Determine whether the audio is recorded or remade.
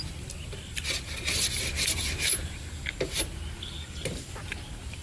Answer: recorded